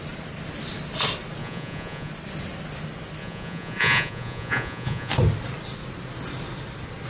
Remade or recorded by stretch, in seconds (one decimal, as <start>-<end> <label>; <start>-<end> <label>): 0.0-1.4 recorded; 1.4-2.1 remade; 2.1-3.2 recorded; 3.2-5.1 remade; 5.1-7.1 recorded